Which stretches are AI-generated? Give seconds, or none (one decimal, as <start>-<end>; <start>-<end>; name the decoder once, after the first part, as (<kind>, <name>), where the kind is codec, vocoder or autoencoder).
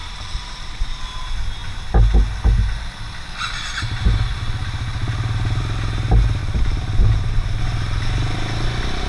0.0-1.0 (vocoder, BigVGAN v2); 6.4-7.6